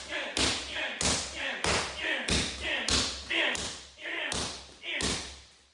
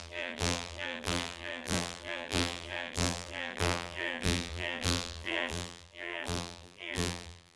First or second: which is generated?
second